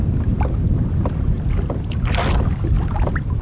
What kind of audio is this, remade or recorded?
recorded